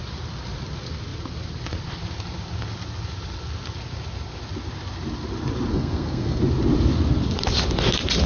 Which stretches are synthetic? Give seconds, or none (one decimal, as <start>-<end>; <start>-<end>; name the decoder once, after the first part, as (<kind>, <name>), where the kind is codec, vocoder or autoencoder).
5.7-6.4 (codec, SNAC)